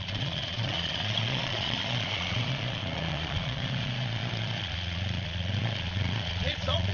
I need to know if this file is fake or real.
fake